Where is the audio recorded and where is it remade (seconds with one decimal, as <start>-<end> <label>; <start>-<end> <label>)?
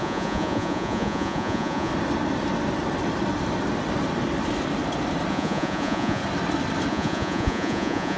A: 0.0-1.9 remade; 1.9-5.3 recorded; 5.3-6.2 remade; 6.2-6.9 recorded; 6.9-8.2 remade